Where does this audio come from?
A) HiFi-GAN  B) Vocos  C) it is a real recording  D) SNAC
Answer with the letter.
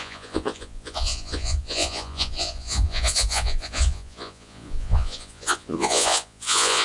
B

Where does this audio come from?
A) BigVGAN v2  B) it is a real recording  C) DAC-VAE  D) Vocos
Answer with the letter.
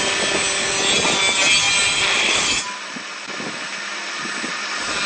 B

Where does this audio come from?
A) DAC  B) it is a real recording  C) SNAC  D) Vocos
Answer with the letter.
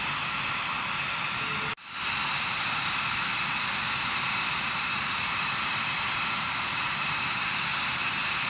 B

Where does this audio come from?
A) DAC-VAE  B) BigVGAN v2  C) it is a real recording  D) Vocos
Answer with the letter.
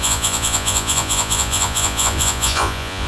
D